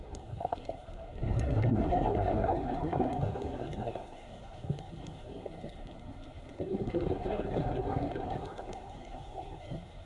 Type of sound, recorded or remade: remade